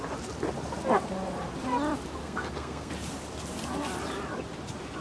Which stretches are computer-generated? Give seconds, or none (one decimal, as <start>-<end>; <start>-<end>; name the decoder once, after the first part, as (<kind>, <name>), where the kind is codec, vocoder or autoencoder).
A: 2.2-2.9 (codec, SNAC)